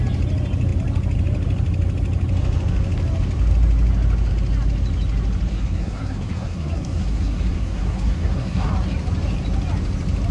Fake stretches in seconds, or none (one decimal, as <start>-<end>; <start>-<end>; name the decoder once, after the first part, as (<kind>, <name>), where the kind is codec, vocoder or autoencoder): 5.5-8.7 (codec, SNAC)